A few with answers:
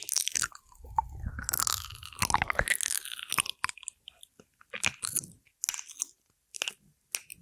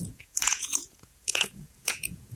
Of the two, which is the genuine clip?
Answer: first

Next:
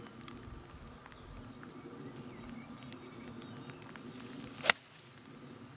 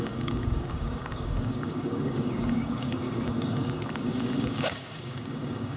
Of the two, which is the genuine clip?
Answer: first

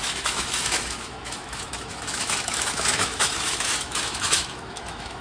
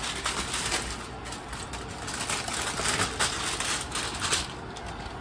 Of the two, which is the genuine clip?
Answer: second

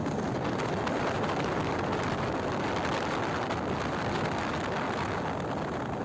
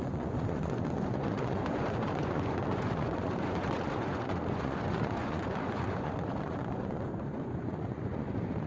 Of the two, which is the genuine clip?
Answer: first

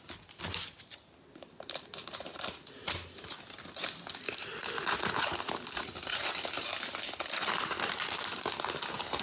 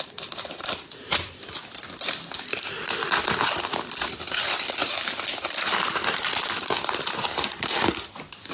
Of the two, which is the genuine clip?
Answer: first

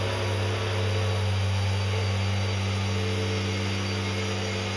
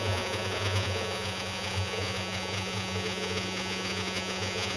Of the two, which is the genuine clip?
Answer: first